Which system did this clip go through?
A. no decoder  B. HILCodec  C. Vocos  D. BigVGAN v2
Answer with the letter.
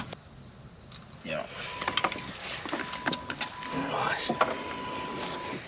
A